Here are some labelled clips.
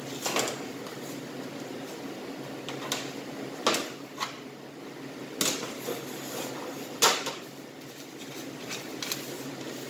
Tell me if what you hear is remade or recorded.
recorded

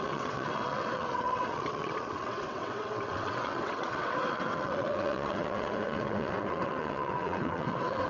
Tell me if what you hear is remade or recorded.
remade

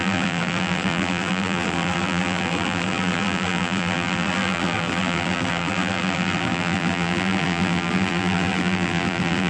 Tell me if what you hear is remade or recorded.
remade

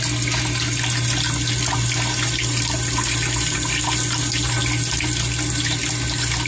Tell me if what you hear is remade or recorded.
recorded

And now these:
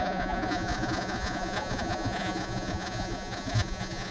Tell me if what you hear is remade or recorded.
remade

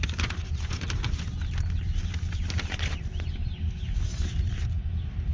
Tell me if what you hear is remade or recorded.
recorded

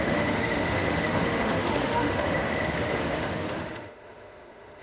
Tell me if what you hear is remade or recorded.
remade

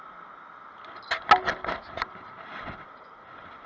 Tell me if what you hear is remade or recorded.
recorded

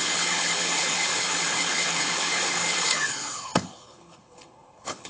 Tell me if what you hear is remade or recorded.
remade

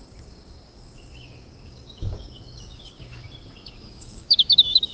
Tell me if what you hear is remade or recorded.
remade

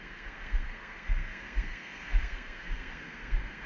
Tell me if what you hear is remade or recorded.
remade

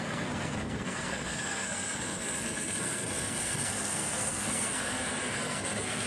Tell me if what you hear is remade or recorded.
remade